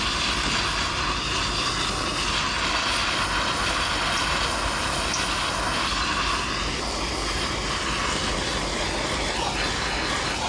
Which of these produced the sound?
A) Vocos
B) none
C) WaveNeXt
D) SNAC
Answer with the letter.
B